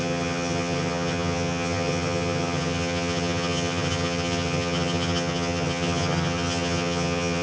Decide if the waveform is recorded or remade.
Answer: remade